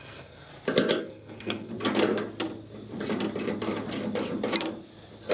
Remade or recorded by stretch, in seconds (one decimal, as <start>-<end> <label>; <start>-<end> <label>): 0.0-0.5 remade; 0.5-1.0 recorded; 1.0-1.7 remade; 1.7-5.3 recorded